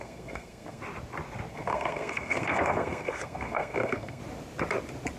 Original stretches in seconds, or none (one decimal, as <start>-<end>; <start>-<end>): 0.8-1.5; 4.2-5.2